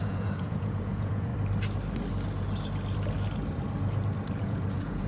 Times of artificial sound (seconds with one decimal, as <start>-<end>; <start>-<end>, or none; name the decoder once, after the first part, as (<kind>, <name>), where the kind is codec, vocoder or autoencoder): 0.0-1.3 (vocoder, Vocos); 4.4-5.1